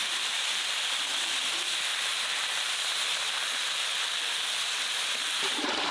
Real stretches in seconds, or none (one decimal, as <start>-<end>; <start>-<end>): 1.1-2.1; 3.1-5.9